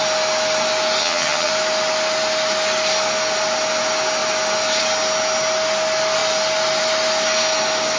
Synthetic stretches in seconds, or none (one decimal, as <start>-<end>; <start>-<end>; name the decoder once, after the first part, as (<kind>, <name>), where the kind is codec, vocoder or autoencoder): 1.0-1.5 (vocoder, HiFi-GAN)